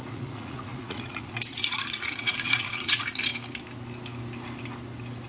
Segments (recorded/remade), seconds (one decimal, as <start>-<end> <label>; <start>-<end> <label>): 0.0-3.3 remade; 3.3-5.3 recorded